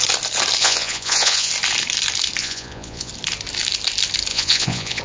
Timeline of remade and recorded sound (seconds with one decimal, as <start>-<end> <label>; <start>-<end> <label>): 0.0-0.6 recorded; 0.6-1.5 remade; 1.5-2.4 recorded; 2.4-3.1 remade; 3.1-4.3 recorded; 4.3-5.0 remade